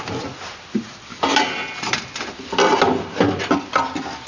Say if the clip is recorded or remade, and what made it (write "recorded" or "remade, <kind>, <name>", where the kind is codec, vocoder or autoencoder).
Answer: recorded